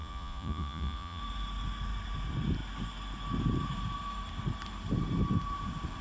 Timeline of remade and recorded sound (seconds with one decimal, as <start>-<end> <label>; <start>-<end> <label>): 0.0-1.2 remade; 1.2-6.0 recorded